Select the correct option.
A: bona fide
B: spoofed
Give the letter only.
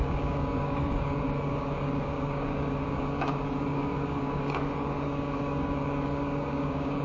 B